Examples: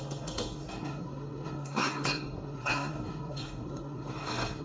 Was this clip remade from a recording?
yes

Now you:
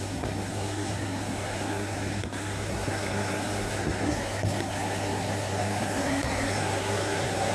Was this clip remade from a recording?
yes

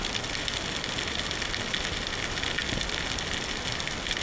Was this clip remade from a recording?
no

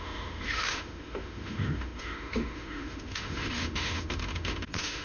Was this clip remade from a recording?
yes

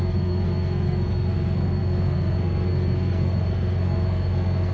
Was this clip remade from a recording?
yes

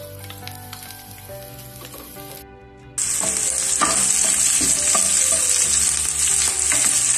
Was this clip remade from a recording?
no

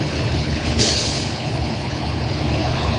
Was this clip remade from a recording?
yes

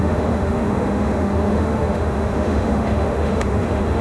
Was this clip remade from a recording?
yes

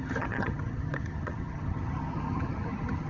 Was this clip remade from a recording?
yes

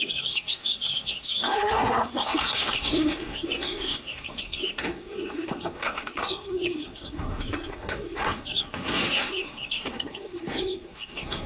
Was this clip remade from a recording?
yes